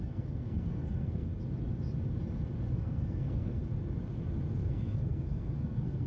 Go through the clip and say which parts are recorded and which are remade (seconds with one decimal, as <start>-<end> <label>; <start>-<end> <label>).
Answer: 0.0-1.3 remade; 1.3-2.7 recorded; 2.7-3.6 remade; 3.6-4.5 recorded; 4.5-6.1 remade